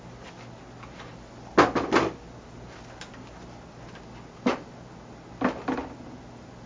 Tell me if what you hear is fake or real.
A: real